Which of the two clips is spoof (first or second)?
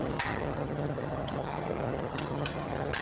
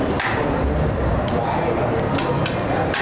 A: first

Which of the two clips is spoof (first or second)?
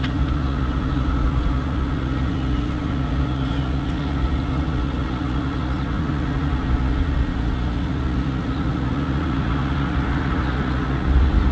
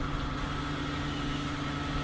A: first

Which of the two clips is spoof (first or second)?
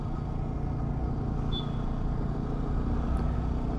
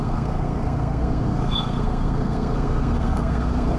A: second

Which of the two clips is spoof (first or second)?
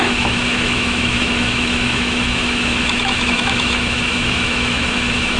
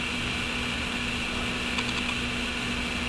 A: first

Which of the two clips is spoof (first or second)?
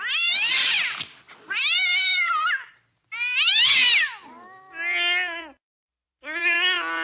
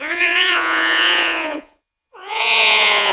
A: second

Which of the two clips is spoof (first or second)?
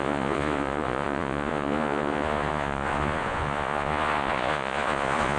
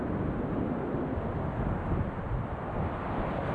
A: first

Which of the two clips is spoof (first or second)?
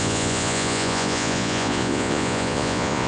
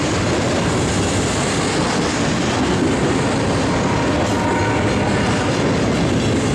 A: first